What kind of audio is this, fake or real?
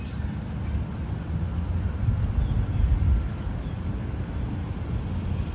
real